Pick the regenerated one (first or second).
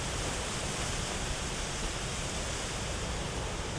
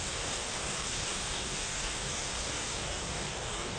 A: second